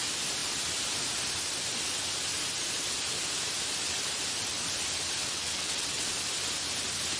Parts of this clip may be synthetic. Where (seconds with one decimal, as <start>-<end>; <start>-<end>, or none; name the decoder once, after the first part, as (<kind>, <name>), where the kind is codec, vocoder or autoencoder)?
5.2-6.1 (vocoder, WaveNeXt)